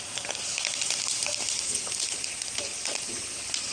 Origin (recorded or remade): recorded